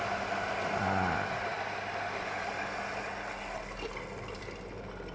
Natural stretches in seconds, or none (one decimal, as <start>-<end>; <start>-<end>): 0.0-5.1